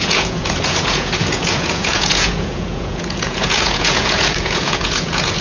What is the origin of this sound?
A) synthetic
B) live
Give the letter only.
A